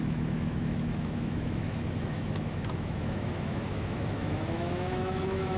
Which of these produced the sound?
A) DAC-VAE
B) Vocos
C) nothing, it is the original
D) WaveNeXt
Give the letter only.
A